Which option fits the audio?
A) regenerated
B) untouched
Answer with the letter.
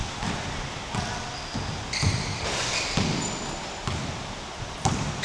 B